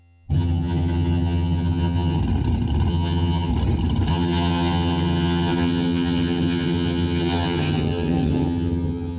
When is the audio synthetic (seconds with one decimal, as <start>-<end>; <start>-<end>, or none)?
0.0-2.2; 2.9-3.5; 4.1-9.2